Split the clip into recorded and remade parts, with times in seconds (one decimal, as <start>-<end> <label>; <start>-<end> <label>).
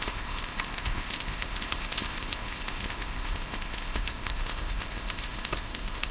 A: 0.0-6.1 remade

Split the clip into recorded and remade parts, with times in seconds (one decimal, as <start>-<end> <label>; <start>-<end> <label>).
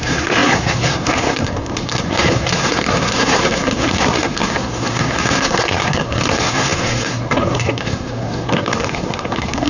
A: 0.0-9.7 remade